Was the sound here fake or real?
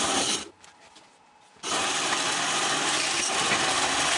fake